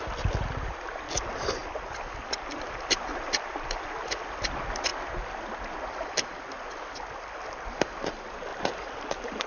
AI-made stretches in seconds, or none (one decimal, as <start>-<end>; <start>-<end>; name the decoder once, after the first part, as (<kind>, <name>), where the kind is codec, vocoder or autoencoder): none